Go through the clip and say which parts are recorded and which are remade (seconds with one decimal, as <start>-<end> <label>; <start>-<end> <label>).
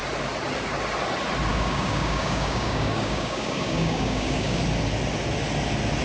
0.0-1.5 recorded; 1.5-4.6 remade; 4.6-6.0 recorded